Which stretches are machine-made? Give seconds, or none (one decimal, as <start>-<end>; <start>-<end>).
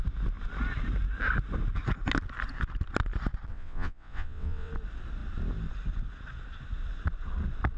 3.5-4.7